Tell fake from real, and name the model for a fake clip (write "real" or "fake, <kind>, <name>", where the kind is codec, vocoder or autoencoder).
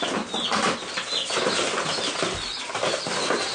real